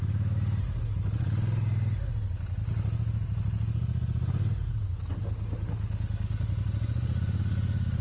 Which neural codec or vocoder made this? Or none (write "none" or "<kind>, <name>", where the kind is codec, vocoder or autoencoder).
none